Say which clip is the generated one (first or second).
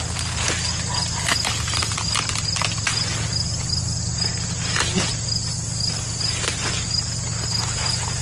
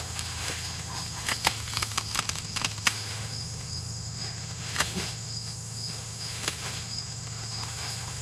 second